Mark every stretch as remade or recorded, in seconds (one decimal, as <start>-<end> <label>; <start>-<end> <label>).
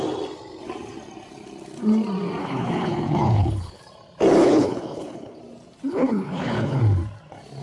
0.0-2.4 recorded; 2.4-3.8 remade; 3.8-4.4 recorded; 4.4-5.4 remade; 5.4-5.9 recorded; 5.9-6.8 remade; 6.8-7.6 recorded